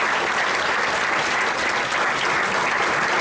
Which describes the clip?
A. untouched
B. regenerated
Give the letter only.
A